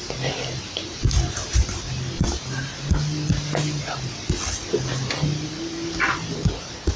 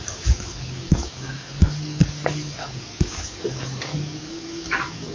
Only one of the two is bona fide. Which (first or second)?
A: first